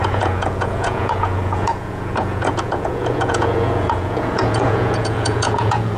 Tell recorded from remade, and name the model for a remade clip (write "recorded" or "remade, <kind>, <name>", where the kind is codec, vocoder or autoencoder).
remade, vocoder, Vocos